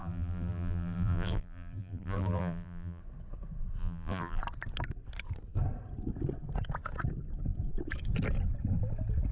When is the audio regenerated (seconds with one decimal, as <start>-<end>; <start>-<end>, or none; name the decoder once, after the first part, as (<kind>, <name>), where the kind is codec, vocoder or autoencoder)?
0.0-3.0 (vocoder, BigVGAN v2); 3.8-4.4